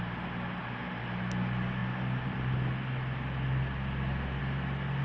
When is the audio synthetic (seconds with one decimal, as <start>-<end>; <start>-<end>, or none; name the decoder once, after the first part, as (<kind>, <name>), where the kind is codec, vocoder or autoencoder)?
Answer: none